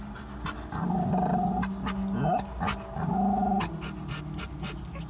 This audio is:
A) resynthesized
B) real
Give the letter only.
B